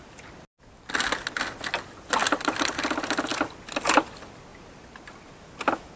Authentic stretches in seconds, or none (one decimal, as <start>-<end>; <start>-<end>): 0.0-2.2; 2.8-4.5; 5.2-6.0